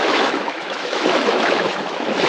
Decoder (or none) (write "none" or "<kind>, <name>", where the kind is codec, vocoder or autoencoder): autoencoder, DAC-VAE